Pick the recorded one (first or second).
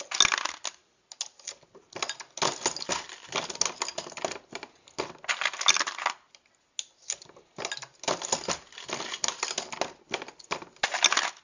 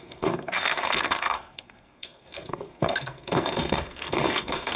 first